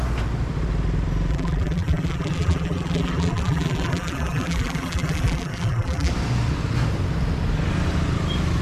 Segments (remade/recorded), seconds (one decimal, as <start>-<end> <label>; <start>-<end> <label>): 0.0-1.3 recorded; 1.3-6.1 remade; 6.1-8.6 recorded

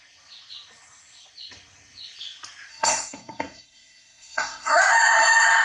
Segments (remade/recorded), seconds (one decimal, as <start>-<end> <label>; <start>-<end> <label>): 0.0-2.7 recorded; 2.7-4.8 remade; 4.8-5.6 recorded

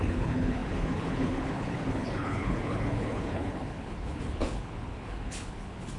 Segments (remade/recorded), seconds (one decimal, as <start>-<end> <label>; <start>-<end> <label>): 0.0-6.0 remade

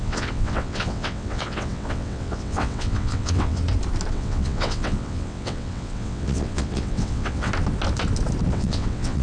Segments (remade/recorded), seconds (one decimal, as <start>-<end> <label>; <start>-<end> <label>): 0.0-3.6 remade; 3.6-4.1 recorded; 4.1-7.5 remade; 7.5-8.5 recorded; 8.5-9.2 remade

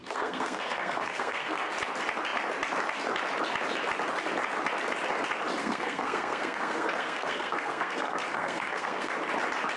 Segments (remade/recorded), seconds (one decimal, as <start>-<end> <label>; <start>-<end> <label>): 0.0-1.7 remade; 1.7-5.6 recorded; 5.6-9.1 remade; 9.1-9.8 recorded

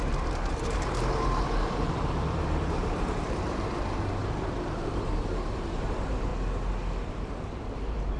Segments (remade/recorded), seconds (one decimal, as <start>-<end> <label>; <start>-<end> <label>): 0.0-6.3 remade; 6.3-7.1 recorded; 7.1-8.2 remade

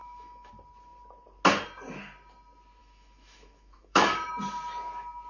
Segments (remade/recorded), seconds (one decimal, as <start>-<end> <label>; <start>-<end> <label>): 0.0-0.5 remade; 0.5-2.8 recorded; 2.8-4.3 remade; 4.3-5.3 recorded